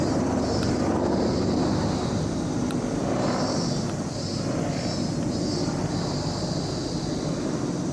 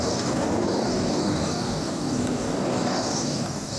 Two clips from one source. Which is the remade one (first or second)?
second